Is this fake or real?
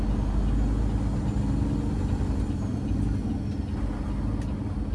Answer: real